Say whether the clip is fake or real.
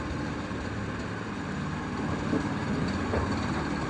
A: real